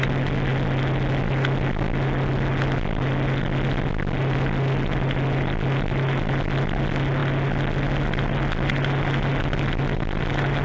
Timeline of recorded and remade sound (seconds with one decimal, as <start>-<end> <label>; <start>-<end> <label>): 0.0-10.6 recorded